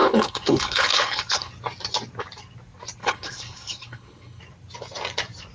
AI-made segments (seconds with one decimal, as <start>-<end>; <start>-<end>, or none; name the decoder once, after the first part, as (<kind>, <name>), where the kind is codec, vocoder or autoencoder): 0.0-1.5 (codec, HILCodec); 3.0-4.4